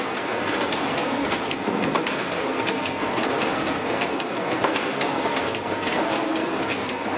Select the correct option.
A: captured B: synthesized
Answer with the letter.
B